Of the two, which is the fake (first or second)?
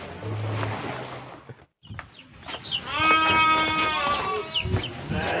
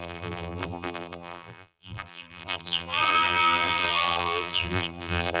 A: second